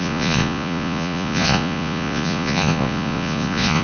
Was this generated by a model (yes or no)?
yes